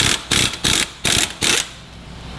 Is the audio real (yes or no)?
yes